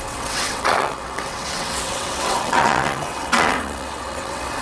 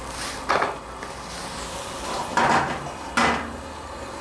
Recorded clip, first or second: second